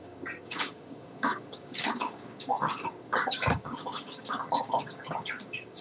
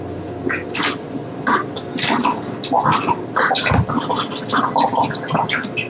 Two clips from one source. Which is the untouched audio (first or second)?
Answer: second